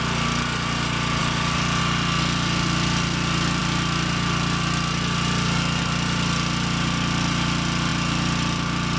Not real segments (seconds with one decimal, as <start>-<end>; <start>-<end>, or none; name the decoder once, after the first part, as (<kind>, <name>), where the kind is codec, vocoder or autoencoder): 1.2-1.8 (vocoder, BigVGAN v2)